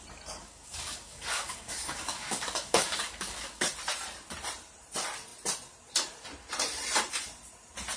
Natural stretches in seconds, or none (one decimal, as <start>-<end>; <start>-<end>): 0.0-0.4; 3.6-8.0

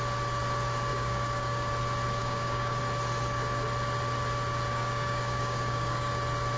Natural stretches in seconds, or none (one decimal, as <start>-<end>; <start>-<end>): 0.0-0.9; 1.7-2.2; 2.8-4.7; 6.1-6.6

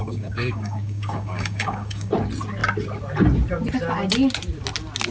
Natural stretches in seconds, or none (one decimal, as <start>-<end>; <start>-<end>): 2.1-5.1

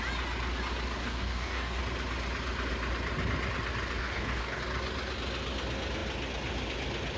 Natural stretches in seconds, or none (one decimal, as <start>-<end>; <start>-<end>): 0.0-1.0; 1.8-4.0; 4.6-7.2

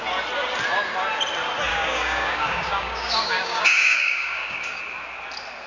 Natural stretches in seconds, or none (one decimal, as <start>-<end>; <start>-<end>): 0.0-1.7; 4.8-5.7